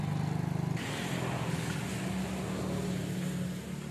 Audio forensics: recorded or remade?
recorded